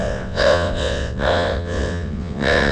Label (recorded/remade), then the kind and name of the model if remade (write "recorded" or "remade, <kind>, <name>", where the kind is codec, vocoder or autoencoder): remade, vocoder, WaveNeXt